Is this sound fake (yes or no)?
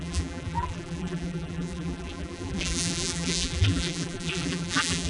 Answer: yes